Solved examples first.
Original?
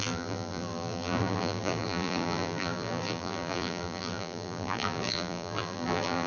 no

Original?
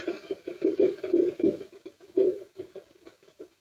no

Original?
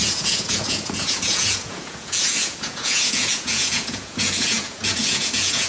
no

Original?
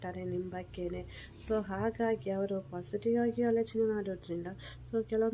yes